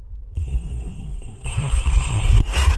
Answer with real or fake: fake